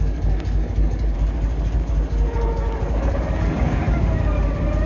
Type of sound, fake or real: fake